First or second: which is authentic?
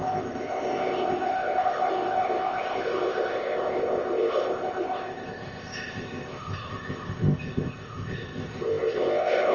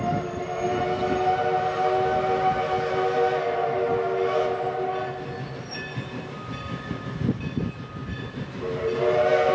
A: second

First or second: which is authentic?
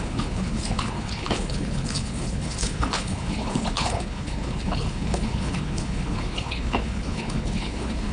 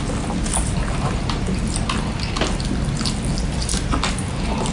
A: second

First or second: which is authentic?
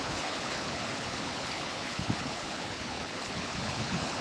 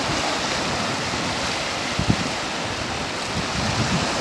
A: second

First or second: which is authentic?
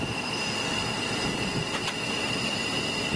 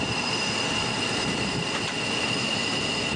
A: first